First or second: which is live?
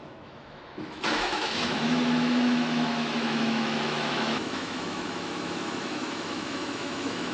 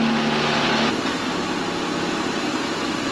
second